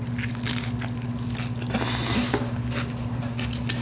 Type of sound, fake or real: real